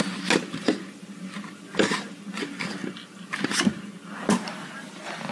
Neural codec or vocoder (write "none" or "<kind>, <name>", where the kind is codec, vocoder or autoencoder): none